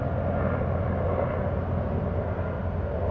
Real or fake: real